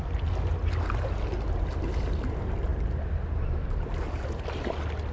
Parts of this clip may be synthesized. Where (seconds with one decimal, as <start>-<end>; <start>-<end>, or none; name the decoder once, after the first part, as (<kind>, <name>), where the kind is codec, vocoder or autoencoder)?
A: none